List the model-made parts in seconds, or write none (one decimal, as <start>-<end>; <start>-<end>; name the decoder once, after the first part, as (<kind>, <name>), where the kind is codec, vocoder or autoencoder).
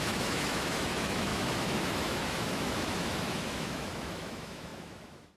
0.0-5.4 (autoencoder, DAC-VAE)